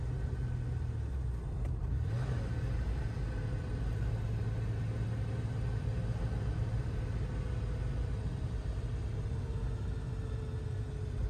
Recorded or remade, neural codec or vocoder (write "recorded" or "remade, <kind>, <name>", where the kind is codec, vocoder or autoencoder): recorded